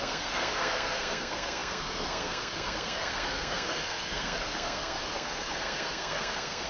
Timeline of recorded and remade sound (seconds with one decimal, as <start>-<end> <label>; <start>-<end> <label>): 0.0-6.7 remade